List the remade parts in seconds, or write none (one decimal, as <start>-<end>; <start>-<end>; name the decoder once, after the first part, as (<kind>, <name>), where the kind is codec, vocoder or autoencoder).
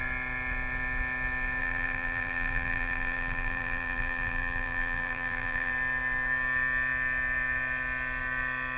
1.6-5.7 (vocoder, BigVGAN v2)